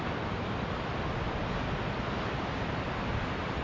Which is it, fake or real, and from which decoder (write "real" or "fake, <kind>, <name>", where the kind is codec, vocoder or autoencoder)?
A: real